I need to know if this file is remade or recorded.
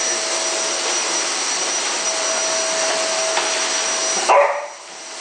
recorded